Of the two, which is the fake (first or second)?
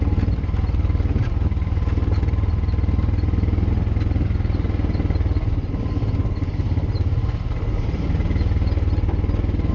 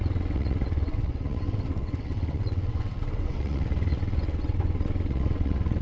second